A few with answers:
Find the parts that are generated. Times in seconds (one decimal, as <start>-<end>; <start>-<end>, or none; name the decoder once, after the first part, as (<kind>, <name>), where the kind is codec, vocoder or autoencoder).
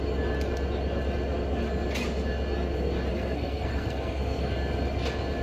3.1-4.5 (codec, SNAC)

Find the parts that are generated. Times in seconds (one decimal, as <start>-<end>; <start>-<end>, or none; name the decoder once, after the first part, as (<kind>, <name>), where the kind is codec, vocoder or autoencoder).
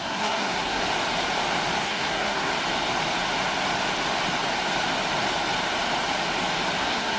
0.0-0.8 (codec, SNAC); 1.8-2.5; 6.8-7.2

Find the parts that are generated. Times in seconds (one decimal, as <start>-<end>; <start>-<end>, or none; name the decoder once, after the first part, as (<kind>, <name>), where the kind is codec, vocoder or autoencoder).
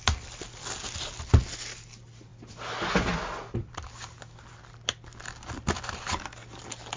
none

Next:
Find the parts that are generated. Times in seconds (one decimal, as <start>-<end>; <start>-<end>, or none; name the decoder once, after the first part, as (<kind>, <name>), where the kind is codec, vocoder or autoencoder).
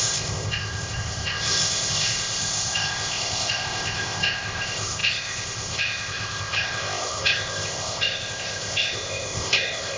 0.0-10.0 (codec, ZipCodec)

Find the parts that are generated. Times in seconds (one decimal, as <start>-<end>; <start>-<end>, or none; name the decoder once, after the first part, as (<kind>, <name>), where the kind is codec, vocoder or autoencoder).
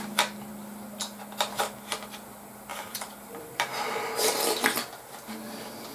2.7-4.4 (vocoder, BigVGAN v2)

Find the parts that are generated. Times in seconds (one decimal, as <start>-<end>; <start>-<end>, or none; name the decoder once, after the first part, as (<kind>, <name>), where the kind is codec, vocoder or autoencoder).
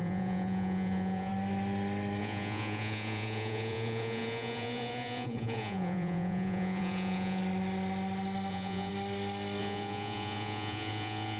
0.0-1.3 (vocoder, Vocos); 2.2-7.4; 8.5-8.9; 9.6-11.4